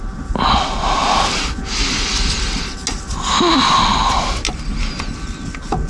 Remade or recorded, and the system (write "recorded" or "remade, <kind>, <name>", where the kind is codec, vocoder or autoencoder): recorded